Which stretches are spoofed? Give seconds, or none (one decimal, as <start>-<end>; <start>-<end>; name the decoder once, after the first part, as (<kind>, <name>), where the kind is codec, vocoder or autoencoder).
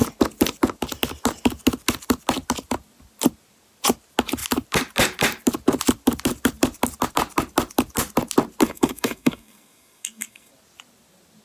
8.6-10.5 (codec, SNAC)